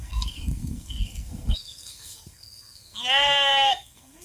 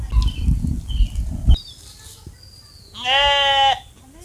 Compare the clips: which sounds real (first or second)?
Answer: second